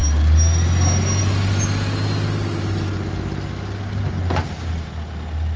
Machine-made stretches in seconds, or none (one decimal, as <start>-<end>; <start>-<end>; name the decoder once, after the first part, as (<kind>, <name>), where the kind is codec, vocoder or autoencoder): none